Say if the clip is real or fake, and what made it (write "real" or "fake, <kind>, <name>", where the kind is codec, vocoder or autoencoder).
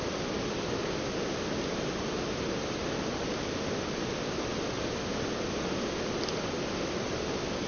real